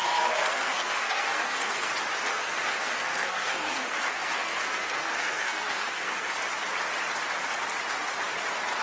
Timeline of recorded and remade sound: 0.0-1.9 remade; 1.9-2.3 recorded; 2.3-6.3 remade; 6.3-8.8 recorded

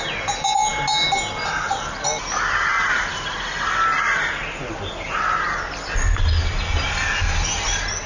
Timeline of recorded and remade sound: 0.0-8.1 recorded

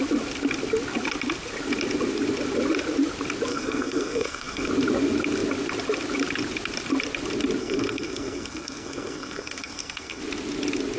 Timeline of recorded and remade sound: 0.0-3.5 recorded; 3.5-4.7 remade; 4.7-7.6 recorded; 7.6-10.2 remade; 10.2-11.0 recorded

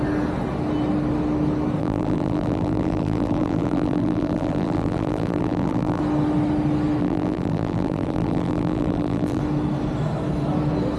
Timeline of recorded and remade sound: 0.0-1.8 recorded; 1.8-6.0 remade; 6.0-7.0 recorded; 7.0-9.4 remade; 9.4-11.0 recorded

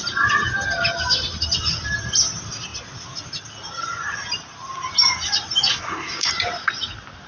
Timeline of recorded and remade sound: 0.0-5.7 recorded; 5.7-6.3 remade; 6.3-7.3 recorded

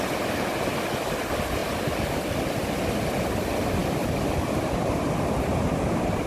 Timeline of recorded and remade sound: 0.0-6.3 recorded

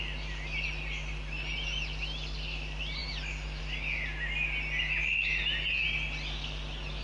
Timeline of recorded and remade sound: 0.0-7.0 recorded

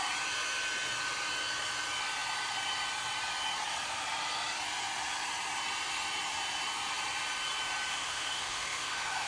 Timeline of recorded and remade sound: 0.0-7.9 recorded; 7.9-9.3 remade